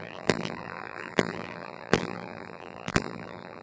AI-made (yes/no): yes